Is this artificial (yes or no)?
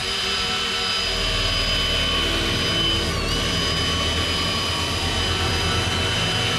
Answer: no